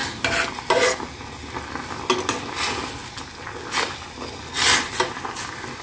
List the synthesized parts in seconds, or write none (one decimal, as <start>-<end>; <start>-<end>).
none

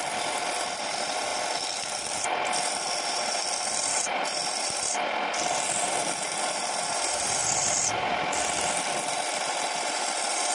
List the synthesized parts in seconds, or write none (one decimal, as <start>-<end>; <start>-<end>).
0.0-7.4; 8.8-10.5

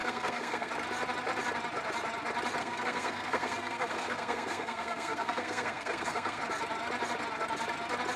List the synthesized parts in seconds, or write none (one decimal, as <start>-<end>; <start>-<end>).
0.0-0.7; 2.6-6.4

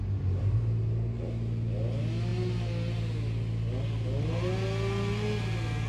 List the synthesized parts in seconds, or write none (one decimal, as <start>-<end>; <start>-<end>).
none

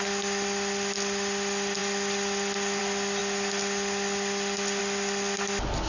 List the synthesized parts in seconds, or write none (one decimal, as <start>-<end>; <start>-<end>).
none

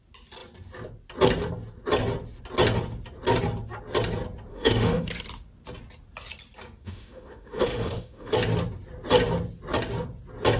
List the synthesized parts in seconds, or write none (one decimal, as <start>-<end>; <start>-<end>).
4.5-5.1; 6.8-8.3

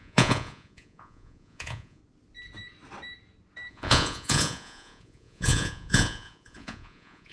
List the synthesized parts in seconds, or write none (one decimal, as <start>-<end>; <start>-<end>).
0.0-2.0; 3.7-7.3